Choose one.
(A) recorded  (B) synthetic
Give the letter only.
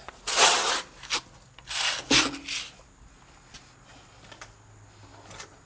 A